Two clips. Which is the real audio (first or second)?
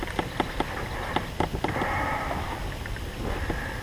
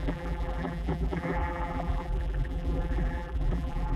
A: first